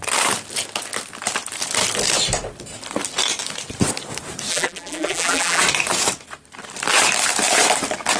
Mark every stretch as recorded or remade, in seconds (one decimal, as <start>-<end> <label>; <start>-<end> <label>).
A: 0.0-4.5 recorded; 4.5-5.6 remade; 5.6-8.2 recorded